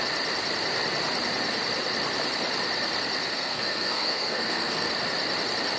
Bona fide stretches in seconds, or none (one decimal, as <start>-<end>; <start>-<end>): 0.0-3.3; 4.9-5.8